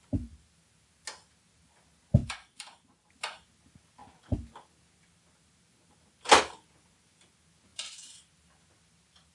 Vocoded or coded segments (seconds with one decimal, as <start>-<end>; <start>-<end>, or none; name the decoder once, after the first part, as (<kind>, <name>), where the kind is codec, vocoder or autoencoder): 2.2-3.1 (vocoder, BigVGAN v2); 7.7-8.2